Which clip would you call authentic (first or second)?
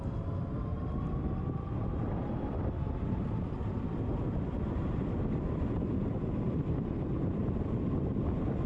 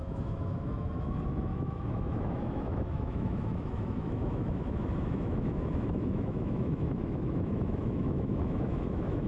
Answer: first